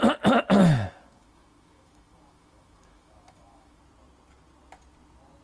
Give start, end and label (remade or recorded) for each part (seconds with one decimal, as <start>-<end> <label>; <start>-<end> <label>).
0.0-0.6 recorded; 0.6-3.8 remade; 3.8-5.4 recorded